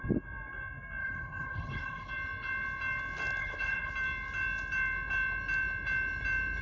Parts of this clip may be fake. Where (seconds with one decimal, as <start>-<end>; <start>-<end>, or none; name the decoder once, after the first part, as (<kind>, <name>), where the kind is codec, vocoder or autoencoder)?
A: 1.0-2.1 (codec, HILCodec); 3.4-3.9